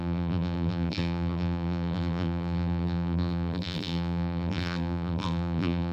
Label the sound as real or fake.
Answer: fake